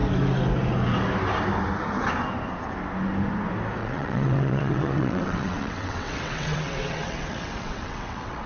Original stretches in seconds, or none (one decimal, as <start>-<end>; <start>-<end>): 0.0-3.8